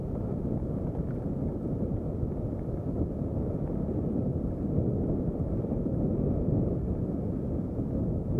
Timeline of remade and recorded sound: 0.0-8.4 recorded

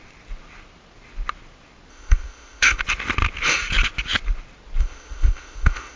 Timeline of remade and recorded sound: 0.0-1.9 recorded; 1.9-2.8 remade; 2.8-4.8 recorded; 4.8-6.0 remade

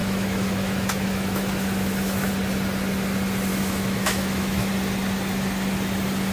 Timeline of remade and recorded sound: 0.0-2.3 remade; 2.3-3.5 recorded; 3.5-4.7 remade; 4.7-6.3 recorded